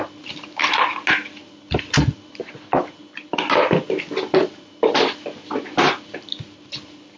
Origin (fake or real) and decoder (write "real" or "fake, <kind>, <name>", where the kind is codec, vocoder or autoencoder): real